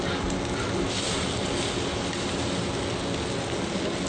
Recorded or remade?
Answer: recorded